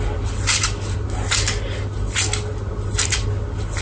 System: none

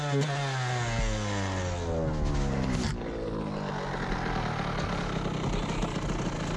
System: none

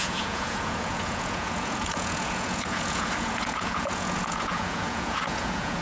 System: vocoder, Vocos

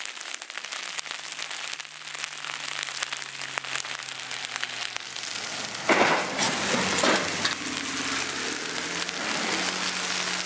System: none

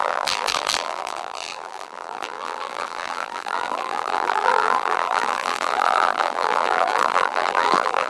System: vocoder, BigVGAN v2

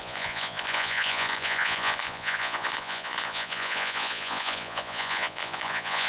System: vocoder, Vocos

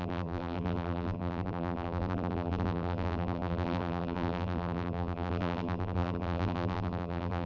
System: vocoder, BigVGAN v2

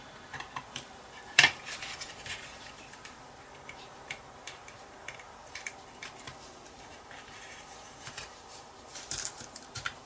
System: vocoder, BigVGAN v2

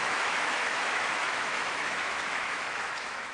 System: autoencoder, DAC-VAE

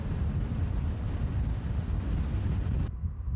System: none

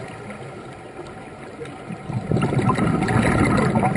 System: none